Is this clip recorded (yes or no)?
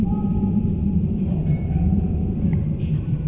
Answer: no